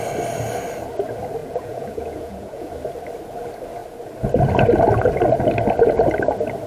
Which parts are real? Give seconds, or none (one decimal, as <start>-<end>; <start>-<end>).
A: 0.0-1.4; 2.7-6.7